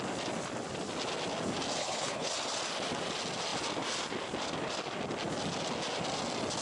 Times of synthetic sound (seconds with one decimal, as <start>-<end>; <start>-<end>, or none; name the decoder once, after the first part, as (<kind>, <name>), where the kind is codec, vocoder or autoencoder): 1.8-2.3 (codec, HILCodec)